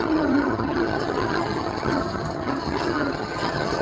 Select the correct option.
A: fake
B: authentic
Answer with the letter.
A